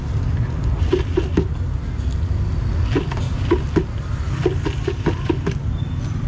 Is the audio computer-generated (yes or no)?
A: no